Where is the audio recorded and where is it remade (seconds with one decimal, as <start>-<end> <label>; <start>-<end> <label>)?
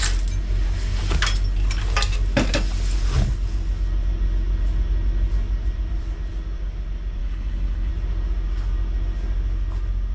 0.0-7.2 recorded; 7.2-7.9 remade; 7.9-10.1 recorded